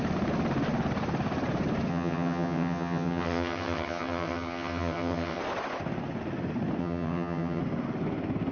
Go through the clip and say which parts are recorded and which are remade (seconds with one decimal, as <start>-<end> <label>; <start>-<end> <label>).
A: 0.0-1.9 recorded; 1.9-5.4 remade; 5.4-6.8 recorded; 6.8-7.6 remade; 7.6-8.5 recorded

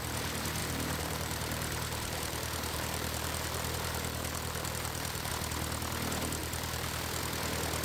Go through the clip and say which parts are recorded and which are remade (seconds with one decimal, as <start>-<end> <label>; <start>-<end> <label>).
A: 0.0-0.6 recorded; 0.6-5.3 remade; 5.3-6.4 recorded; 6.4-7.2 remade; 7.2-7.8 recorded

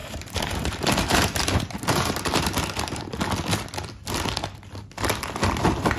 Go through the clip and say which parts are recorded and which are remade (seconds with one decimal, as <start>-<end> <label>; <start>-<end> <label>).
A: 0.0-3.0 remade; 3.0-6.0 recorded